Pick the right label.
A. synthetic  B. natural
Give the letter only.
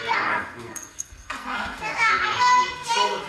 A